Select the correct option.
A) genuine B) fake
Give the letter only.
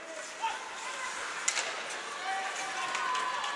A